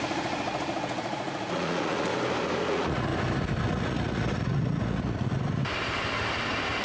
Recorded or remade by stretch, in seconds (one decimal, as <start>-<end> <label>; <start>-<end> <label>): 0.0-2.1 remade; 2.1-2.7 recorded; 2.7-3.1 remade; 3.1-3.6 recorded; 3.6-5.6 remade; 5.6-6.8 recorded